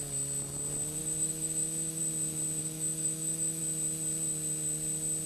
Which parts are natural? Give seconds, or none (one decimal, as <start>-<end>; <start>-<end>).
0.0-1.0; 2.0-2.6; 3.6-5.3